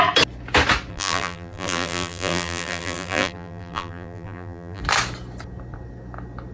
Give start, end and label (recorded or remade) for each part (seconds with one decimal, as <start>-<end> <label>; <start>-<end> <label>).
0.0-0.9 recorded; 0.9-4.8 remade; 4.8-6.5 recorded